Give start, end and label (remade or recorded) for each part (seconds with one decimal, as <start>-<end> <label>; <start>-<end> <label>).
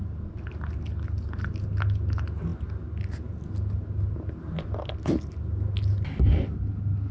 0.0-7.1 recorded